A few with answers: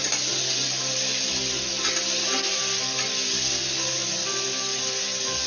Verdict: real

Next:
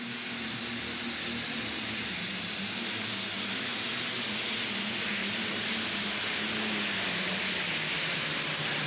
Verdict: real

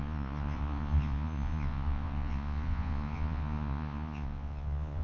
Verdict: fake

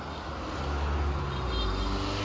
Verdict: real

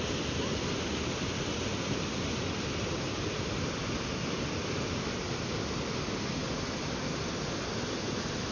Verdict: real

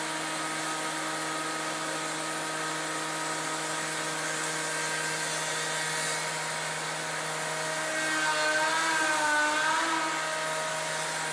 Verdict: real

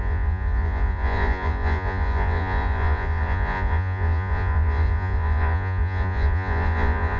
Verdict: fake